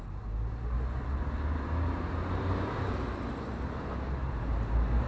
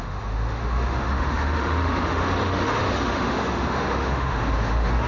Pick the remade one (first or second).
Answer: second